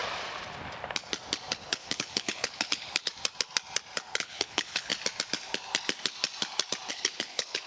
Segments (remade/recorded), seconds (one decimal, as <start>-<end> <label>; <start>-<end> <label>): 0.0-1.5 recorded; 1.5-3.1 remade; 3.1-4.2 recorded; 4.2-4.9 remade; 4.9-6.9 recorded; 6.9-7.7 remade